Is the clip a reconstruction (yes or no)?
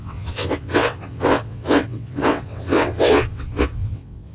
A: yes